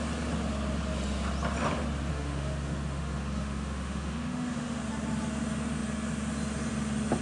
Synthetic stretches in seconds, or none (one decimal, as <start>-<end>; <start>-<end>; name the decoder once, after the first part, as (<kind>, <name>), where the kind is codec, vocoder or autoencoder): 2.1-4.8 (autoencoder, DAC-VAE)